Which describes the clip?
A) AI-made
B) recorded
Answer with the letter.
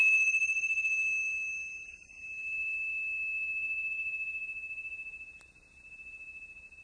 B